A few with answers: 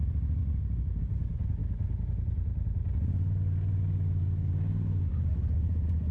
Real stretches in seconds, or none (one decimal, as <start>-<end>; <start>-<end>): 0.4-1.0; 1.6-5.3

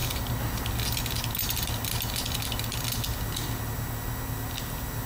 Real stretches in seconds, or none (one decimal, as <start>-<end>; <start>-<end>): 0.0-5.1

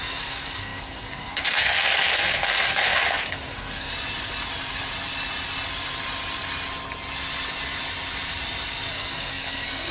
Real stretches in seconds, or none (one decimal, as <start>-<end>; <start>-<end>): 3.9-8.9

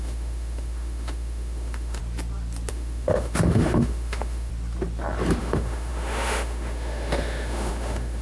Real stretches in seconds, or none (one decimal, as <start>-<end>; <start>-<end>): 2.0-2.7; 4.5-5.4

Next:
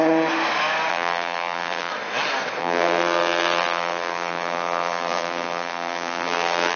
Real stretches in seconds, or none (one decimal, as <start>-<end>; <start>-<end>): 0.0-0.9; 1.9-2.6

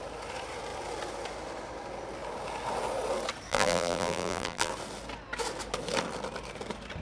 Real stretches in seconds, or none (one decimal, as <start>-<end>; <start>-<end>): 0.0-3.5; 4.7-7.0

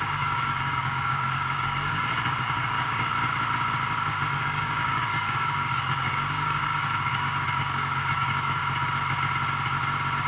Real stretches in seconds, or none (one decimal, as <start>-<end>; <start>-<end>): 3.1-4.3; 8.6-10.3

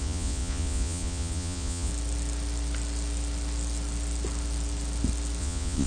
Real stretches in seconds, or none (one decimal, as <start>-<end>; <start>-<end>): 1.9-5.4